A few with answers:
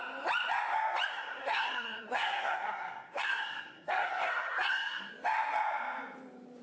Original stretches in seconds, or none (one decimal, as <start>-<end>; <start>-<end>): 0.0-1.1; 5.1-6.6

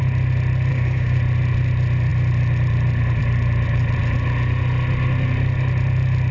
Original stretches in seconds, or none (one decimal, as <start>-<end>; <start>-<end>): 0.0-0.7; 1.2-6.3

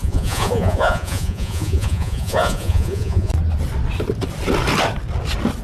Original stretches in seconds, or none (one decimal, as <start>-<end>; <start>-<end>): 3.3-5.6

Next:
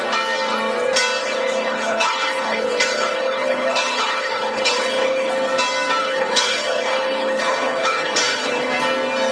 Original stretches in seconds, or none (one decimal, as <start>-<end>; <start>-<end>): 0.0-1.2; 5.3-6.0; 8.7-9.3

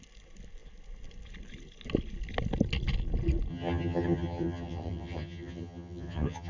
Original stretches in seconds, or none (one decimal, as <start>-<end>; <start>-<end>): 0.0-3.5

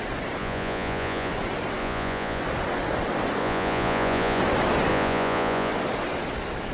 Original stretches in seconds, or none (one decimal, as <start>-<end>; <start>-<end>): 0.0-0.4; 1.3-1.8; 2.4-3.4; 4.4-4.9; 5.7-6.7

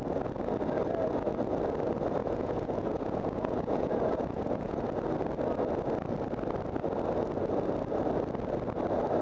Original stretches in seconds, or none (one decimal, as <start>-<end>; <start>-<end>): 0.0-2.2; 4.8-9.2

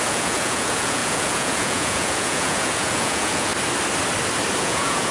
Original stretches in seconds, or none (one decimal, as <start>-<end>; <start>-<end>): 3.5-4.6